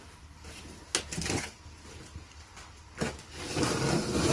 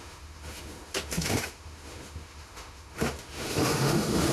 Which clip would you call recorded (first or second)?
first